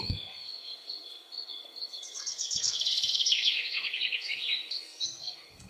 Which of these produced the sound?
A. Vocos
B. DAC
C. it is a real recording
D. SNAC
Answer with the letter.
D